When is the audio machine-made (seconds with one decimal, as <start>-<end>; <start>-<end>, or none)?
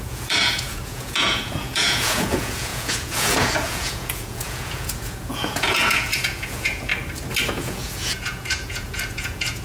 0.0-6.9; 7.5-9.6